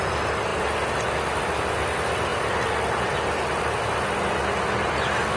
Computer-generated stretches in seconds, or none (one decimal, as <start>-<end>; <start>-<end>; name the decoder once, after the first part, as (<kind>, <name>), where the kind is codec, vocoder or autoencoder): none